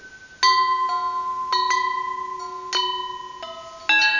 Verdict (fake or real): real